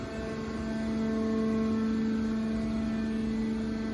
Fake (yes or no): no